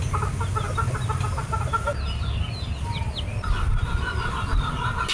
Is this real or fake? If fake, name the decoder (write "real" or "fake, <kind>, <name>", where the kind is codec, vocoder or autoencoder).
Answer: real